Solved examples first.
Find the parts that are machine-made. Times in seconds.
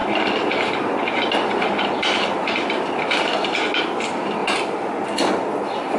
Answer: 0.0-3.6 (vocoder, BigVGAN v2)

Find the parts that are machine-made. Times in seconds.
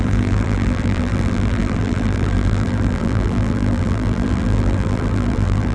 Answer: 0.0-5.7 (vocoder, BigVGAN v2)